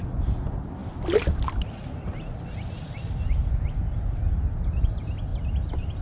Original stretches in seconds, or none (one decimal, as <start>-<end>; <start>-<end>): 0.0-6.0